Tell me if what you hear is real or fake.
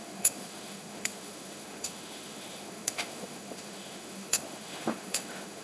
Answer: fake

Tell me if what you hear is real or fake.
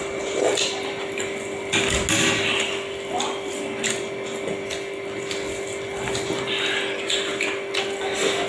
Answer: real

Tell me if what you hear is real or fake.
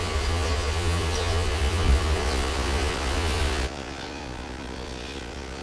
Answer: fake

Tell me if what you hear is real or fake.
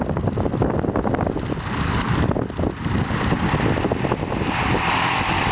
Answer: real